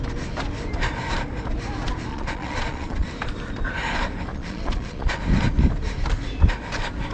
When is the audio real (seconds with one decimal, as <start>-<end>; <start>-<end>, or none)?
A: 0.0-2.1; 3.1-4.3; 5.2-7.1